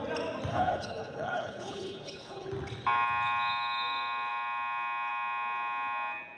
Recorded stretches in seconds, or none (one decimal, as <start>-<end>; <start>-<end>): 0.0-0.5; 2.5-6.4